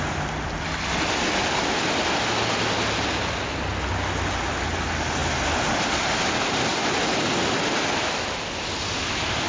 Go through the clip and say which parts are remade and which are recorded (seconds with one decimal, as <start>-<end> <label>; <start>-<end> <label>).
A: 0.0-9.5 recorded